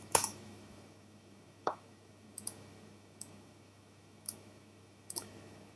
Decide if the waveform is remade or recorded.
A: remade